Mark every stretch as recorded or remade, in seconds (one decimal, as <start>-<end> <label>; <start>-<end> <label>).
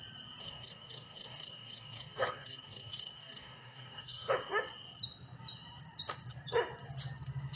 0.0-0.4 recorded; 0.4-4.3 remade; 4.3-7.6 recorded